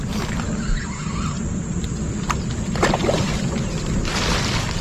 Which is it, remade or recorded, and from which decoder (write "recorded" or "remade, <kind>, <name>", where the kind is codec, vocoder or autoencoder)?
remade, vocoder, BigVGAN v2